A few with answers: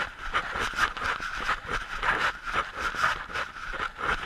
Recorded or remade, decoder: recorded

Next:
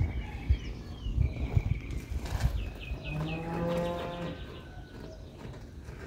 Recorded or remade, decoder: recorded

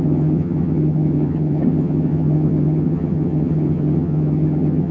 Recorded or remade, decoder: remade, vocoder, HiFi-GAN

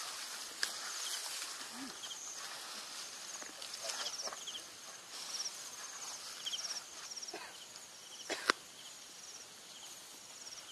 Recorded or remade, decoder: recorded